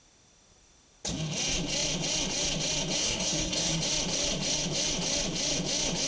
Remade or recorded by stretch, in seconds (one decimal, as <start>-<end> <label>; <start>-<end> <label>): 0.0-3.0 recorded; 3.0-3.8 remade; 3.8-6.1 recorded